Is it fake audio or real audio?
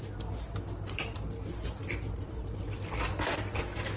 real